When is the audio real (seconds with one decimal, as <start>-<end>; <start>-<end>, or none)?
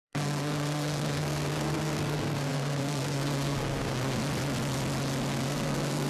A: 4.2-5.3